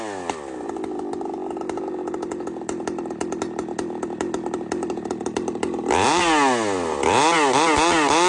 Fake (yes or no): no